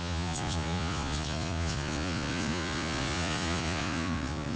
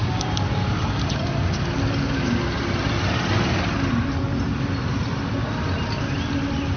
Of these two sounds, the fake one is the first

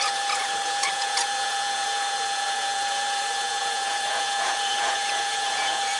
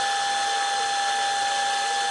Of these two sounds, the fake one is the first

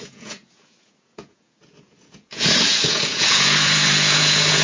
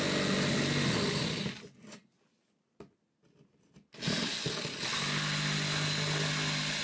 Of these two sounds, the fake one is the first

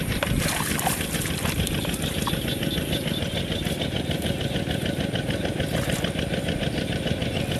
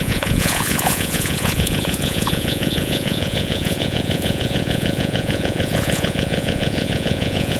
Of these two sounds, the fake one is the second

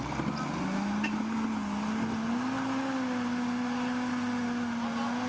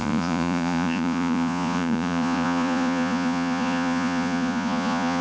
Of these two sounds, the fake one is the second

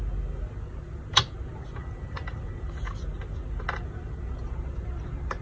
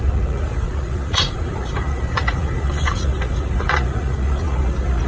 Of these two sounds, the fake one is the second